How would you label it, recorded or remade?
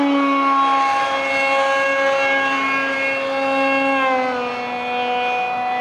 recorded